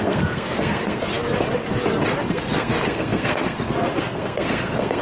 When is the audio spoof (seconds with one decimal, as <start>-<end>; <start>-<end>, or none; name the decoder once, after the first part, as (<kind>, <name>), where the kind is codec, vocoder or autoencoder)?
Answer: 0.0-1.1 (codec, SNAC); 2.3-5.0